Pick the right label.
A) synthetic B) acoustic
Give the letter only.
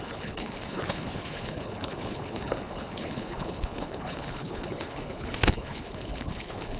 A